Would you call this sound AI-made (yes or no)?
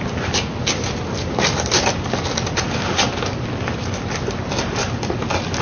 no